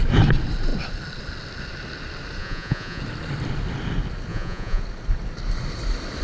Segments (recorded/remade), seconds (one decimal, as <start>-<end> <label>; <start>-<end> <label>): 0.0-2.4 recorded; 2.4-3.0 remade; 3.0-4.3 recorded; 4.3-4.8 remade; 4.8-6.2 recorded